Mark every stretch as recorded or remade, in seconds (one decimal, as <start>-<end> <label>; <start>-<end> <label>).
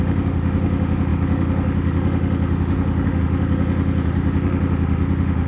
0.0-5.5 remade